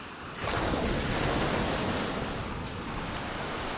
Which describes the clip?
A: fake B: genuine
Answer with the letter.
B